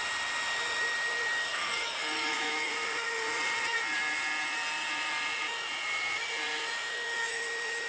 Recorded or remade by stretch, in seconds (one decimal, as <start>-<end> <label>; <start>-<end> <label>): 0.0-1.5 recorded; 1.5-2.7 remade; 2.7-7.9 recorded